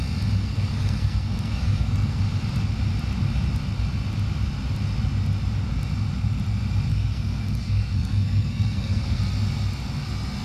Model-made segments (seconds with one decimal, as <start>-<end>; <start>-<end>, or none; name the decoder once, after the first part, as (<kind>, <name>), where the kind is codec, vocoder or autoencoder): 0.4-2.2 (codec, SNAC); 6.9-9.2